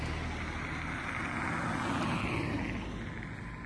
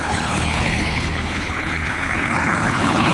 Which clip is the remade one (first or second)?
second